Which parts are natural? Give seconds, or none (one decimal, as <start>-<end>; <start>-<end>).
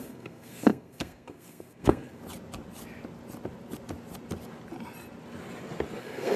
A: 2.2-6.0